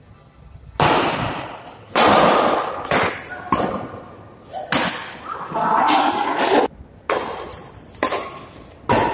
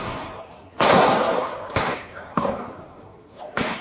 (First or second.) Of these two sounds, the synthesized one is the second